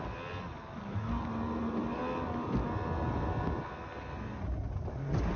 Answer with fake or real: real